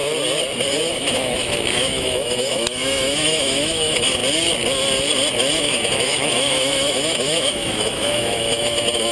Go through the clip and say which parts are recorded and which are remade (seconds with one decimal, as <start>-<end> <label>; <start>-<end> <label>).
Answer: 0.0-0.9 recorded; 0.9-4.2 remade; 4.2-5.6 recorded; 5.6-9.1 remade